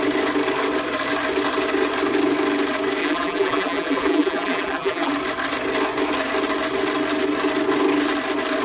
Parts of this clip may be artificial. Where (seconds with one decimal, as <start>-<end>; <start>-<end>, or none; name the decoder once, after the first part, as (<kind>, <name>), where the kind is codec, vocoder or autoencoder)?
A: 3.0-5.1 (vocoder, BigVGAN v2)